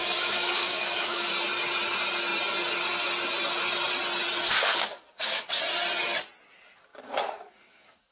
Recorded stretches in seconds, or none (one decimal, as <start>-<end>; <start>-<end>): 1.3-4.6; 5.5-6.9